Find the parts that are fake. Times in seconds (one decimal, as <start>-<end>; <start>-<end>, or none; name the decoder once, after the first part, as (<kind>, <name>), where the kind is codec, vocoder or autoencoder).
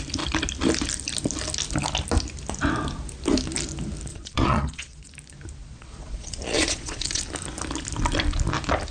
4.1-5.1 (vocoder, Vocos); 5.6-7.2